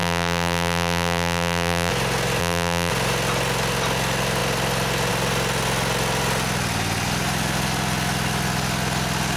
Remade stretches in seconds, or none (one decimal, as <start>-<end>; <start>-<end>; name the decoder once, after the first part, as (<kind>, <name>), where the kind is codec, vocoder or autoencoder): 0.0-1.9 (vocoder, BigVGAN v2); 2.4-2.9